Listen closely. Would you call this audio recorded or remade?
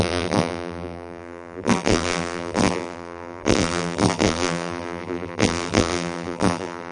remade